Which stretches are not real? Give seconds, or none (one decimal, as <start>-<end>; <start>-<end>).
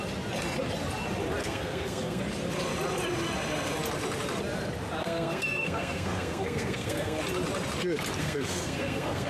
1.4-2.2; 5.0-7.2; 8.2-9.3